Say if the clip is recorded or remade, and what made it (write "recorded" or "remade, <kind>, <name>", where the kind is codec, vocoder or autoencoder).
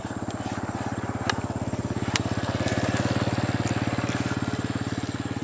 recorded